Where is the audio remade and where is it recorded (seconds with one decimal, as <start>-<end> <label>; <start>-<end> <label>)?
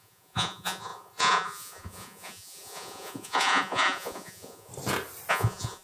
0.0-4.7 remade; 4.7-5.3 recorded; 5.3-5.8 remade